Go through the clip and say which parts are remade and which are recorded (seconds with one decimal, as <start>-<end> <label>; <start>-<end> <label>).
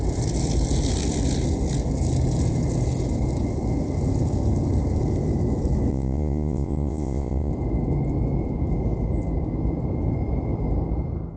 0.0-5.9 recorded; 5.9-7.5 remade; 7.5-11.4 recorded